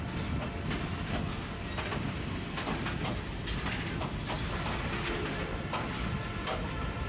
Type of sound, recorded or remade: recorded